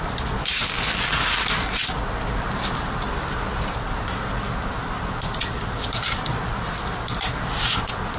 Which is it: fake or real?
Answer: real